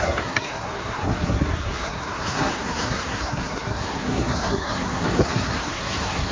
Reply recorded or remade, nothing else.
remade